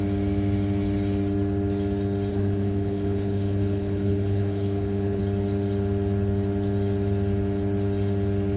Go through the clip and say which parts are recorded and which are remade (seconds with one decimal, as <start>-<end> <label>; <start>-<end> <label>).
0.0-2.3 recorded; 2.3-5.2 remade; 5.2-8.6 recorded